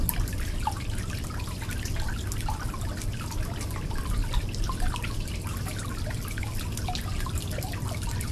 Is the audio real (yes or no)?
yes